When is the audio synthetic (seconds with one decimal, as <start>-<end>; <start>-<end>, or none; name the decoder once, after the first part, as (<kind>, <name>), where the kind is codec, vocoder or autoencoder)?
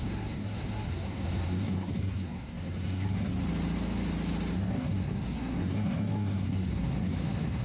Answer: 0.0-3.3 (codec, SNAC); 4.7-7.6